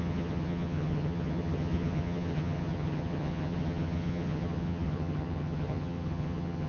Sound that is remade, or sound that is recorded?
remade